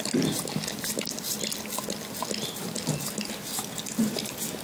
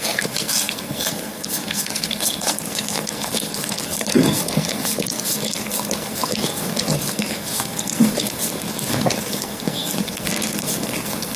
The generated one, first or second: second